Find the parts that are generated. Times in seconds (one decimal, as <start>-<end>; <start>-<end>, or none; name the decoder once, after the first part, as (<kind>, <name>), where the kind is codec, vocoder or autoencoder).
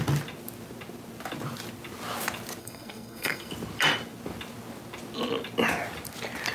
2.6-3.5 (codec, SNAC)